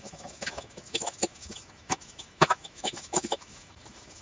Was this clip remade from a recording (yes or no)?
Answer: yes